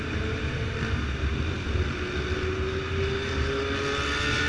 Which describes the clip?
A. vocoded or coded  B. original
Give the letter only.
B